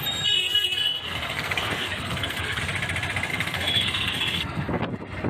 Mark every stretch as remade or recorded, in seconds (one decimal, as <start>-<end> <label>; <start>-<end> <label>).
0.0-0.4 recorded; 0.4-2.6 remade; 2.6-3.3 recorded; 3.3-4.8 remade; 4.8-5.3 recorded